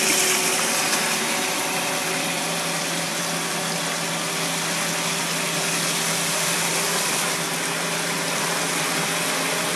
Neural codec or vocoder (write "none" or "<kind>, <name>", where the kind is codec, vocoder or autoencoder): none